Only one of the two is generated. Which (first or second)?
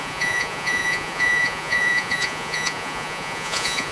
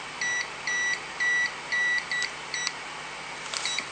first